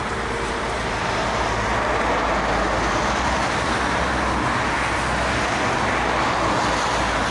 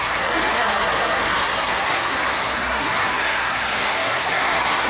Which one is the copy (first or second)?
second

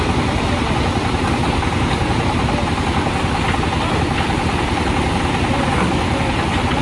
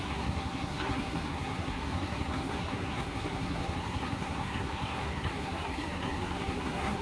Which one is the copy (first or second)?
second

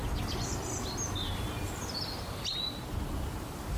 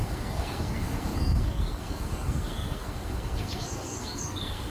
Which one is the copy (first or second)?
second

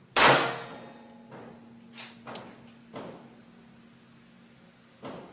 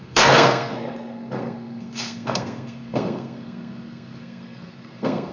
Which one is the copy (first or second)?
second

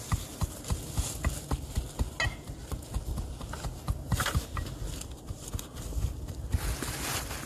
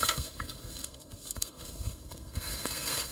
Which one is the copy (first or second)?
second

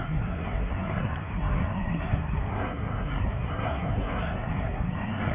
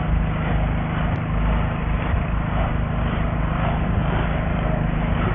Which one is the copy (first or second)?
first